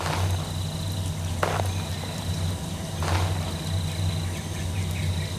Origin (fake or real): real